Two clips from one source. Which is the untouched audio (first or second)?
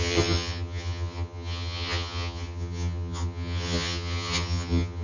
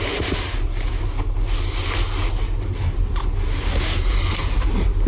second